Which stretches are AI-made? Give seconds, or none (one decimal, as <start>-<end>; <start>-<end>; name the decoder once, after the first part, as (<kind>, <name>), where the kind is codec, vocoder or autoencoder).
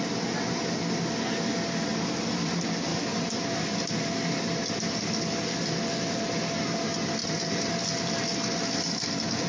2.9-3.4 (vocoder, BigVGAN v2); 7.2-7.7